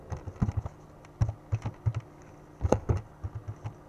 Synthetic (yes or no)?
no